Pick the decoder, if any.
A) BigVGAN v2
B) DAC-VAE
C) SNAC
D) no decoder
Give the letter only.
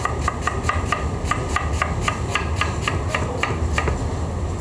D